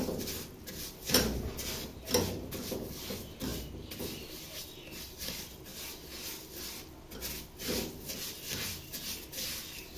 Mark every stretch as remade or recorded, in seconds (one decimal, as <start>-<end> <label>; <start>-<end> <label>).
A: 0.0-10.0 recorded